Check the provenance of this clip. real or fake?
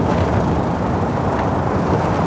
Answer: real